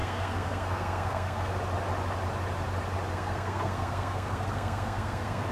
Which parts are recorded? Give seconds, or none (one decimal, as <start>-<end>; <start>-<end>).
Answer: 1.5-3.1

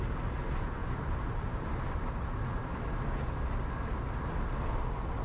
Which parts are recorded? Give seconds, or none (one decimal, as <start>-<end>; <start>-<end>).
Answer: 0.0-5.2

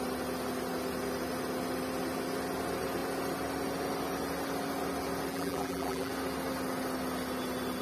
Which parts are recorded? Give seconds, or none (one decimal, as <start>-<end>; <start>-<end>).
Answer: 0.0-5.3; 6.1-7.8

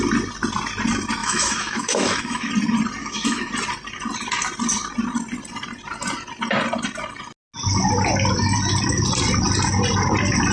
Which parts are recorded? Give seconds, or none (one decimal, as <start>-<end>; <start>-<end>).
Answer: 0.0-1.2; 2.5-3.0; 3.5-10.5

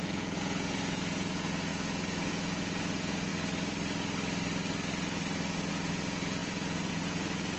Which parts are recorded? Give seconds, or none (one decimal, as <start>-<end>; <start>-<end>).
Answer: 3.3-5.7

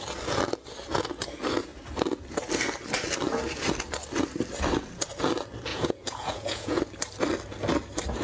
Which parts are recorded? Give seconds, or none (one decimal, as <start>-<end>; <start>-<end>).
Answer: 0.0-5.7; 6.8-8.2

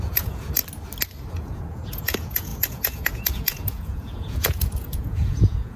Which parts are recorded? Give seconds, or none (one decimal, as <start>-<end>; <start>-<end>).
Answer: 0.6-1.3